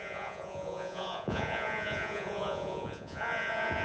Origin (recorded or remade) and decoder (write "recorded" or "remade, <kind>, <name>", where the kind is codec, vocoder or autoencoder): remade, vocoder, Vocos